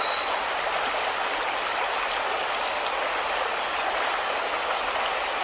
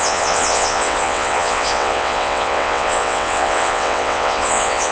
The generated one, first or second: second